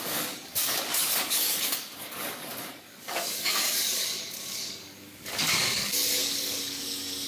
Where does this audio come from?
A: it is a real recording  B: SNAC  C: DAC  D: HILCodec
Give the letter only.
C